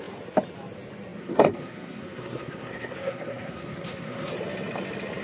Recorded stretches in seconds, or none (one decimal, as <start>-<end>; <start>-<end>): 0.0-1.2; 4.3-5.2